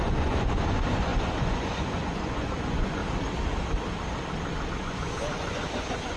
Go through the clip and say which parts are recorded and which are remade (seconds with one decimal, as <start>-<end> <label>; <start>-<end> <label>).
0.0-3.0 remade; 3.0-4.7 recorded; 4.7-6.2 remade